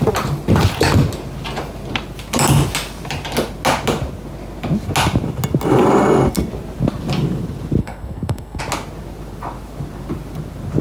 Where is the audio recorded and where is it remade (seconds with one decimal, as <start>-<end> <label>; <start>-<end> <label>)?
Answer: 0.0-7.8 recorded; 7.8-8.6 remade; 8.6-10.8 recorded